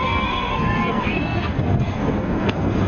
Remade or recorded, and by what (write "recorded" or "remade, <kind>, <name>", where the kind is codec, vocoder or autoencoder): remade, codec, SNAC